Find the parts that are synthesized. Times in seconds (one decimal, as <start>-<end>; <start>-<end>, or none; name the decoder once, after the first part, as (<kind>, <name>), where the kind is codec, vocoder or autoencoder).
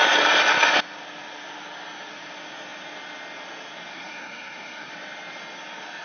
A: 3.9-4.9 (codec, SNAC)